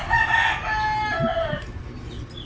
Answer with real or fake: real